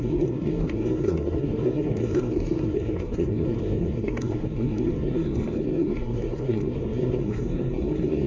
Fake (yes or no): yes